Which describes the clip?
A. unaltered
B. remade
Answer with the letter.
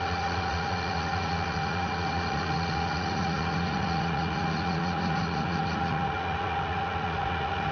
B